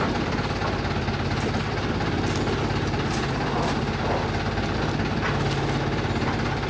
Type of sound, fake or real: real